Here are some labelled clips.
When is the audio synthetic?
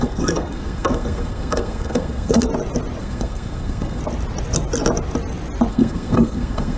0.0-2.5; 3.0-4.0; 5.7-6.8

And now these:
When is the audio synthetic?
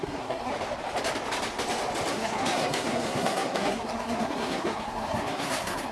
0.0-0.5; 2.1-5.9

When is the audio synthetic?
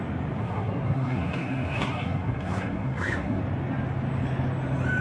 0.4-3.4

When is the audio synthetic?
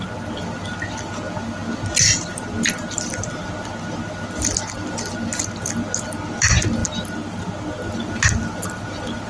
none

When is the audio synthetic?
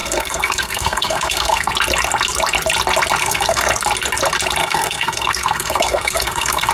0.0-1.7; 3.2-3.7; 4.6-6.7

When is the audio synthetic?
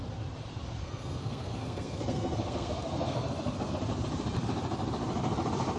0.8-3.7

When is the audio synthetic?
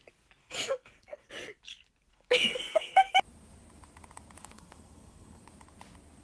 0.4-1.3; 2.1-3.1; 4.4-5.4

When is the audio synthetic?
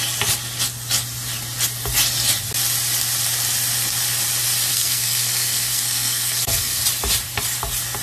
4.7-6.8